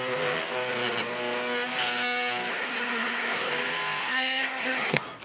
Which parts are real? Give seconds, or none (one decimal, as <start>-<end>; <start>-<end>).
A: 0.0-2.5; 3.5-4.0